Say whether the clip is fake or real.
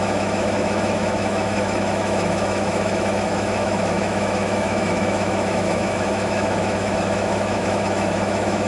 fake